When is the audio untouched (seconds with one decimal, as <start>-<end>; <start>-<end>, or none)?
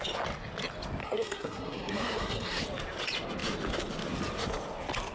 0.0-1.0; 2.6-5.1